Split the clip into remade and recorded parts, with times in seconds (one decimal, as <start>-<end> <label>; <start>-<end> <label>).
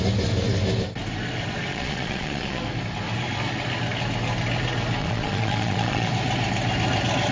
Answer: 0.0-1.7 recorded; 1.7-2.6 remade; 2.6-5.0 recorded; 5.0-6.1 remade; 6.1-7.3 recorded